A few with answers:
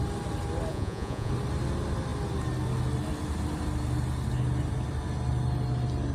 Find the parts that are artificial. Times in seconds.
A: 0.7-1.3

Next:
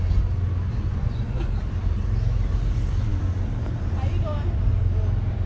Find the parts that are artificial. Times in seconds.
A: 0.9-1.5

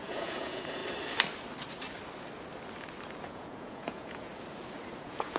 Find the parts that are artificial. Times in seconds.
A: 0.0-0.8; 3.3-4.3; 5.0-5.4